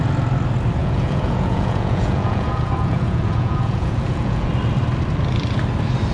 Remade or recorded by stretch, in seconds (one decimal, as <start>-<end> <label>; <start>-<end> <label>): 0.0-0.8 recorded; 0.8-4.5 remade; 4.5-6.1 recorded